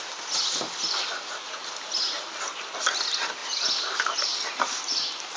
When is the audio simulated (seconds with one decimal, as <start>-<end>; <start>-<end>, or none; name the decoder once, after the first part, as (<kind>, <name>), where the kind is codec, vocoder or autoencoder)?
1.4-1.9 (vocoder, BigVGAN v2); 3.4-4.8